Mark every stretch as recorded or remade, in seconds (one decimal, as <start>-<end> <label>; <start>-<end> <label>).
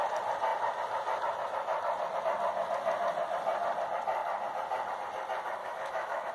0.0-5.6 recorded; 5.6-6.3 remade